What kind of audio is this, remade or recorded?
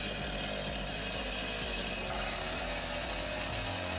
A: recorded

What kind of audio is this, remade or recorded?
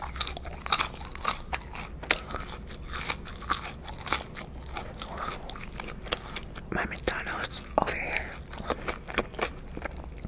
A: recorded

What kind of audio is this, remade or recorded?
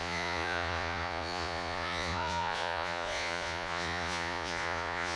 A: remade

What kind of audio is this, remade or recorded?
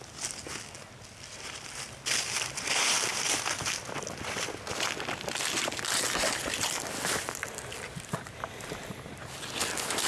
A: recorded